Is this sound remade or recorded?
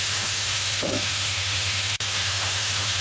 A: remade